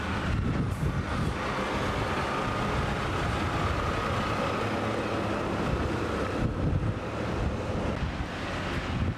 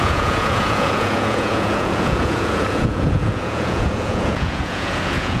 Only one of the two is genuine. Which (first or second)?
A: first